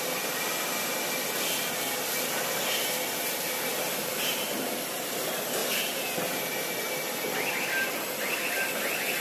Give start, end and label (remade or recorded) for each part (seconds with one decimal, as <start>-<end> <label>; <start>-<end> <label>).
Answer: 0.0-4.0 recorded; 4.0-4.7 remade; 4.7-9.2 recorded